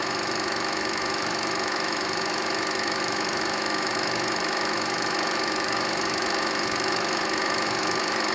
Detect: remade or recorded remade